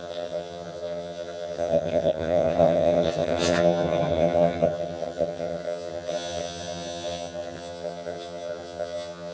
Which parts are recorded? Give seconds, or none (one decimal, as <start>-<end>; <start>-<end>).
none